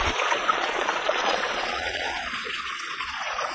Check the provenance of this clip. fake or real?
fake